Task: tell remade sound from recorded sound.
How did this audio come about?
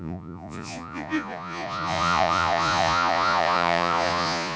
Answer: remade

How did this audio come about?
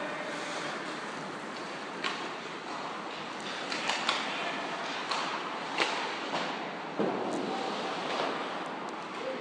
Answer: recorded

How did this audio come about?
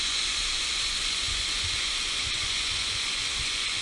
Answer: remade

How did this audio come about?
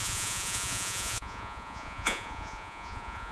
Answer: remade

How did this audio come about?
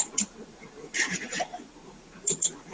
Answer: remade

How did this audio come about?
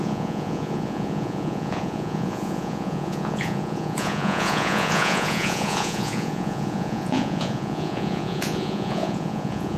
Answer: remade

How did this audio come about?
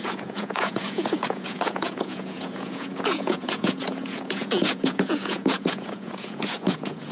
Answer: remade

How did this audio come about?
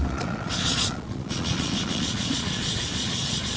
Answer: remade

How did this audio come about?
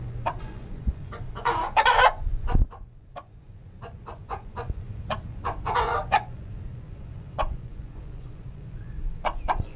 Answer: remade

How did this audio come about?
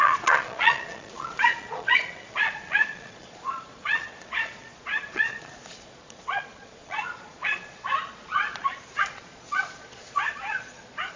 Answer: remade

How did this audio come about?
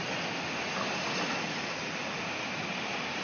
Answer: recorded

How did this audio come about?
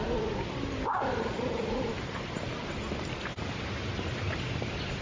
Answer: recorded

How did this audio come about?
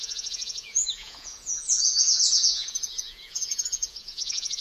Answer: remade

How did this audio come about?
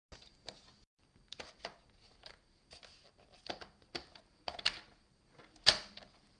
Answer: recorded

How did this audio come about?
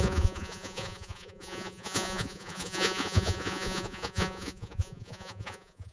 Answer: remade